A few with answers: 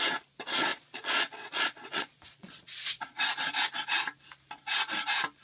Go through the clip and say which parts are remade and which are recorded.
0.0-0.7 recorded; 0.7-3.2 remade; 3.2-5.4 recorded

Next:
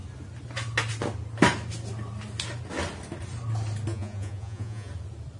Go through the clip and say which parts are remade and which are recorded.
0.0-3.9 recorded; 3.9-4.9 remade; 4.9-5.4 recorded

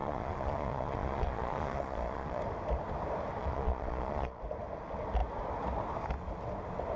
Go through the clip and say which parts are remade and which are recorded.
0.0-2.4 remade; 2.4-3.4 recorded; 3.4-4.4 remade; 4.4-7.0 recorded

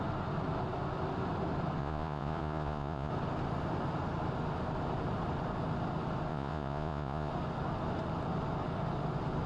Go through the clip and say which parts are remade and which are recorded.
0.0-1.8 recorded; 1.8-3.1 remade; 3.1-6.3 recorded; 6.3-7.3 remade; 7.3-9.5 recorded